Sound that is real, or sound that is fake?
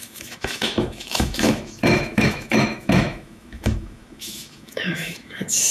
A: fake